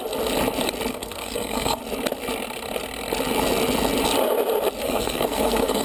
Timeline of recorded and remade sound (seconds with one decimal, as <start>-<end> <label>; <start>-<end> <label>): 0.0-0.9 recorded; 0.9-1.8 remade; 1.8-4.8 recorded; 4.8-5.8 remade